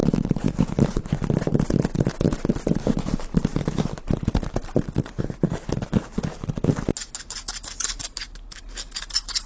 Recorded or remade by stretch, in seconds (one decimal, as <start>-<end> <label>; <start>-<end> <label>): 0.0-9.5 recorded